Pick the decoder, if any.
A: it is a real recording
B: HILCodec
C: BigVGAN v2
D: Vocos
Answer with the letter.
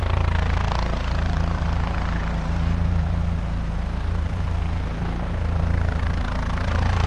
C